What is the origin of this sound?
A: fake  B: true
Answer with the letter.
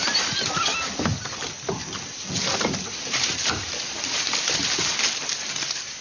B